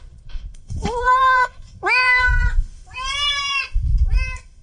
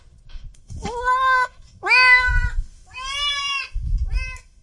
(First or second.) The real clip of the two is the second